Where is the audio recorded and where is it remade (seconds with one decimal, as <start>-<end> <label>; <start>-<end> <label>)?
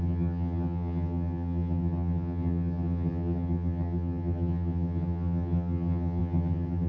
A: 0.0-6.9 remade